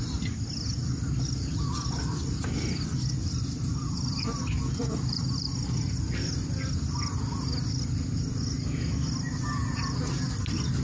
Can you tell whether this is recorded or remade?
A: recorded